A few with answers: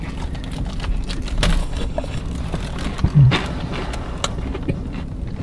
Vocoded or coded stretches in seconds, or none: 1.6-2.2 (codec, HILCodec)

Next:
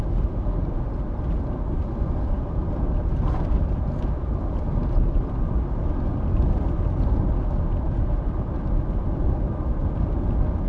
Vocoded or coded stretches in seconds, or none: none

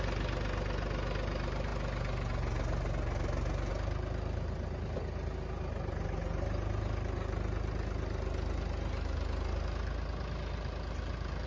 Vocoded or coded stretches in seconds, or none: none

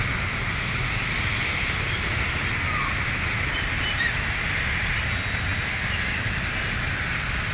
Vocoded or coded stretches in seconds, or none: none

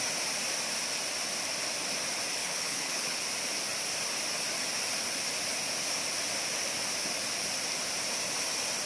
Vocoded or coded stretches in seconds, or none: 2.4-3.2 (codec, HILCodec)

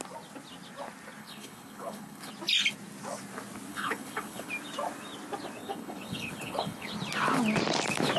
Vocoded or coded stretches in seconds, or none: 1.2-2.3 (codec, HILCodec); 3.7-4.5; 5.6-6.9